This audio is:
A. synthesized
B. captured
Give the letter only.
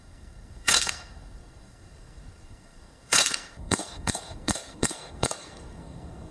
A